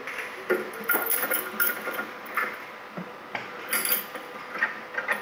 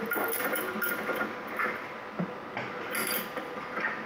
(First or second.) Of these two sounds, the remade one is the first